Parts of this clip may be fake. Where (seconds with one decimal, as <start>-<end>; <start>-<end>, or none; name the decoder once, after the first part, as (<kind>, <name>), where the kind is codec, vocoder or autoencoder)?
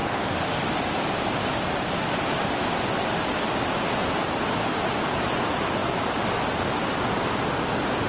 0.0-0.6 (autoencoder, DAC-VAE)